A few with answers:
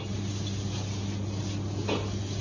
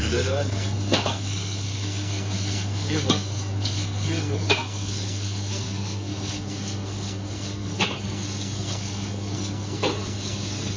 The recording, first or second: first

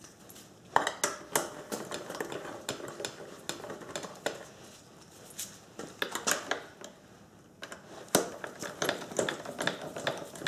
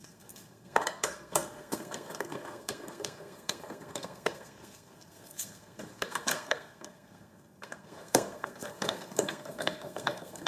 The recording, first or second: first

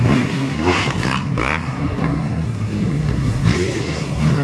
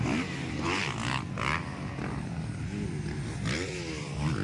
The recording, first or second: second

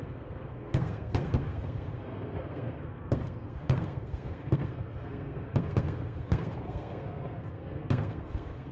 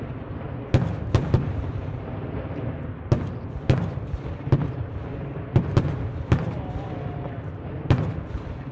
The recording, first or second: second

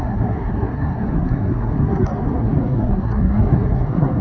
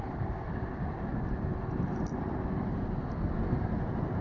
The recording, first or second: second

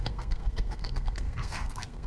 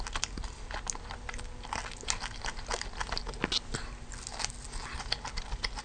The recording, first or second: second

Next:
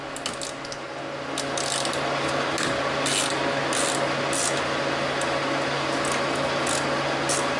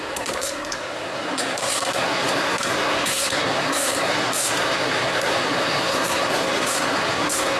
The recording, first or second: first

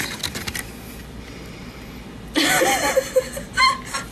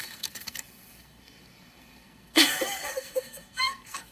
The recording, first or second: first